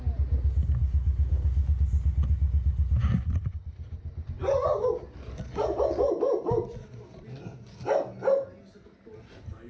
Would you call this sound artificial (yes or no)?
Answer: no